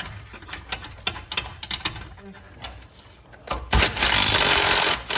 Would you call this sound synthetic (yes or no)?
no